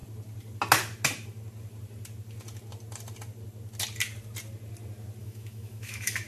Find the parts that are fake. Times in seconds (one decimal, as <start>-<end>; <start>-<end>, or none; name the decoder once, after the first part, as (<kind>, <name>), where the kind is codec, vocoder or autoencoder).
5.2-6.3 (autoencoder, DAC-VAE)